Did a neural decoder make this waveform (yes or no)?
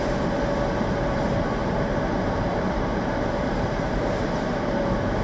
yes